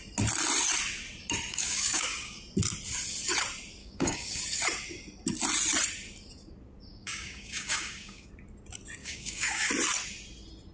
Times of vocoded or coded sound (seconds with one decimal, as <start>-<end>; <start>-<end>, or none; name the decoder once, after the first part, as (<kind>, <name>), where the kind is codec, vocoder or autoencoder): 1.5-2.4 (codec, DAC); 3.8-4.4; 6.9-8.3; 9.0-9.7